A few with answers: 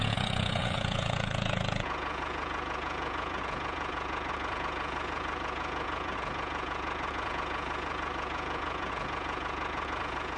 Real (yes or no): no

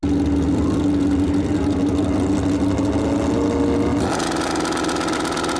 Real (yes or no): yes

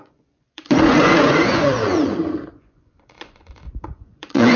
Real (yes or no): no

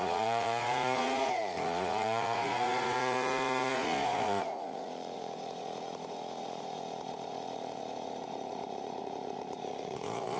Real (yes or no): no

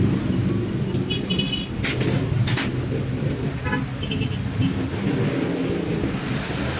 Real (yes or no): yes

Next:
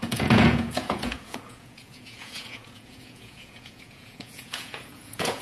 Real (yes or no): no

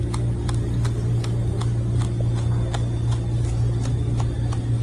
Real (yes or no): yes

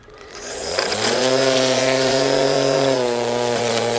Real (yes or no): no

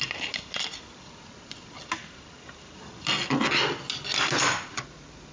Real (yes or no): yes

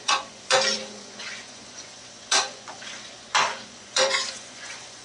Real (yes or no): no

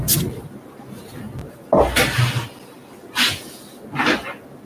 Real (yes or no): yes